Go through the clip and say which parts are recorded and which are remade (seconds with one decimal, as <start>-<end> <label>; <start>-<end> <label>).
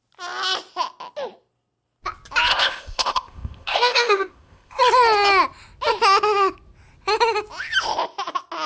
0.0-2.5 recorded; 2.5-4.8 remade; 4.8-8.7 recorded